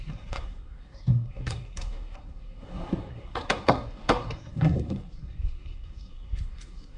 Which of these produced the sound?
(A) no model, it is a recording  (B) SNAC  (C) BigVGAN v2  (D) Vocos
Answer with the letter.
B